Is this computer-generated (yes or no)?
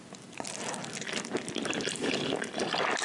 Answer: no